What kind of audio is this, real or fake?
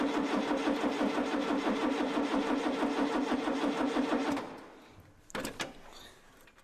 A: real